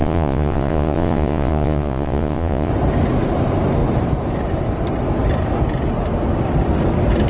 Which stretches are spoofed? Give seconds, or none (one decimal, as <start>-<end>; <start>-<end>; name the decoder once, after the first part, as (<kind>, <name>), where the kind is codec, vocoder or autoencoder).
0.0-2.7 (vocoder, Vocos)